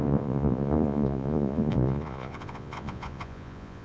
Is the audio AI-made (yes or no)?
yes